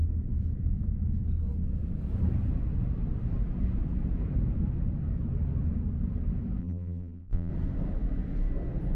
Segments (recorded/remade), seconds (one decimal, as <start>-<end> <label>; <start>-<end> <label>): 0.0-6.6 recorded; 6.6-7.5 remade; 7.5-8.9 recorded